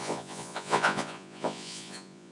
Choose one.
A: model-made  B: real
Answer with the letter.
A